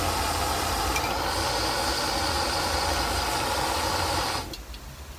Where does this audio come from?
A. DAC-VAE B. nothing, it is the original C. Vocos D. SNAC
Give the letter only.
B